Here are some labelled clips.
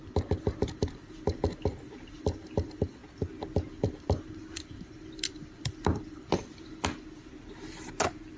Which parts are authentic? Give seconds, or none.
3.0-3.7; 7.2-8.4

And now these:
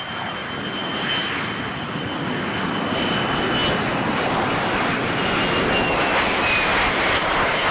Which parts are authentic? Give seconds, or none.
0.0-7.7

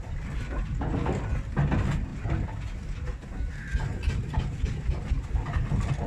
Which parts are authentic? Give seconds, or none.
0.0-6.1

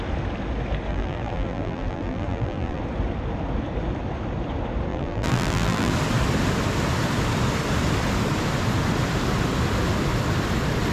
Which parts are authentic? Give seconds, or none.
0.0-0.9; 2.8-4.9; 5.9-10.9

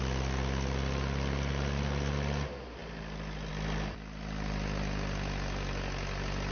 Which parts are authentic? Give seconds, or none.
0.0-6.5

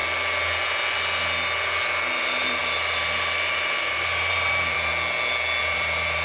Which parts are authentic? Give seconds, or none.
0.0-2.2; 4.9-5.6

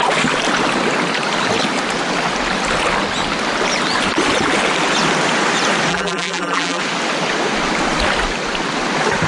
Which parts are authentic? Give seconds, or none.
0.0-5.9; 6.8-9.3

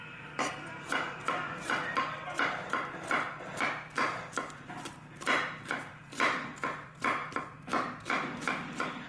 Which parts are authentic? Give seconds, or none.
none